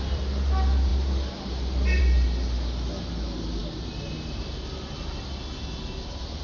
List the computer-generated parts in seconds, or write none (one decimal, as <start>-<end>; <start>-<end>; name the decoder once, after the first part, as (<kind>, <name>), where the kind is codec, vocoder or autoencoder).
none